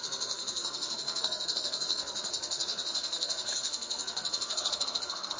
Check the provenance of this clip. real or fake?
fake